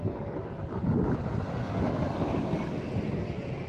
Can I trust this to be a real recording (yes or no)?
yes